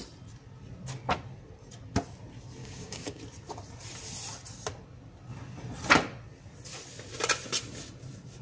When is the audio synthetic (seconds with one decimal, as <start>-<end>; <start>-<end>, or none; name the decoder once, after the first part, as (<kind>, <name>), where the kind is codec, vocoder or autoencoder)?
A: 2.6-3.2 (codec, DAC)